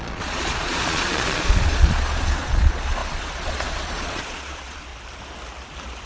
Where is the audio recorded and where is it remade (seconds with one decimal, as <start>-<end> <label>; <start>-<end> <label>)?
0.0-4.9 remade; 4.9-6.1 recorded